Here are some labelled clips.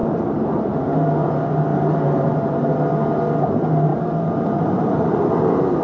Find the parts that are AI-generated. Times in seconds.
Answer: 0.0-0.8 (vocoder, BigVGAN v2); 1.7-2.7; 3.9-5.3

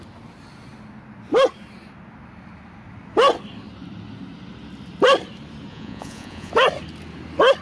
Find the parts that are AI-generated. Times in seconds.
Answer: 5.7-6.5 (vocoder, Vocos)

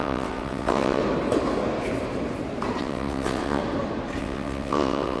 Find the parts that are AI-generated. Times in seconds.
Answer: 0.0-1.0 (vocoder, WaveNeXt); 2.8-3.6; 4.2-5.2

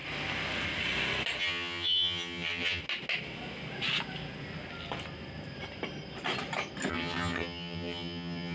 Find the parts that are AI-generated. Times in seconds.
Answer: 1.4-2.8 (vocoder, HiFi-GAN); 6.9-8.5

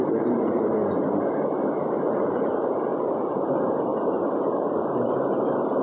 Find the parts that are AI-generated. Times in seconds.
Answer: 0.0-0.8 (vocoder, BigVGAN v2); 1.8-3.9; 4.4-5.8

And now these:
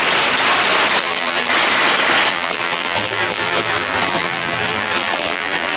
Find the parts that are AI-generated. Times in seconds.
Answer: 1.0-1.5 (vocoder, BigVGAN v2); 2.3-5.8

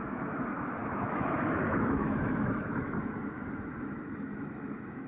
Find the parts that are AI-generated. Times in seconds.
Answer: 0.0-5.1 (autoencoder, DAC-VAE)

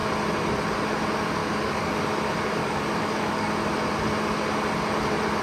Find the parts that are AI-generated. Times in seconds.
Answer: 1.4-2.0 (codec, DAC); 2.6-3.5